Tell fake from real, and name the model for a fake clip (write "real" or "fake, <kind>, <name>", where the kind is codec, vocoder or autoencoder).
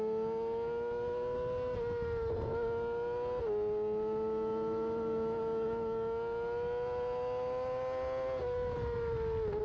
real